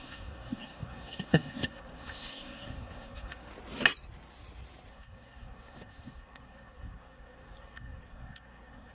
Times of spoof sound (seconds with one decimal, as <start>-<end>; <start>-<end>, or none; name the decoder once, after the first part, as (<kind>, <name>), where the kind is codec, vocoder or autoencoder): 0.0-3.5 (codec, SNAC); 4.9-8.9